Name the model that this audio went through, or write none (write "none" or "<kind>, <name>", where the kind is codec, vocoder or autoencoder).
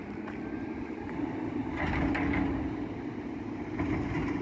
none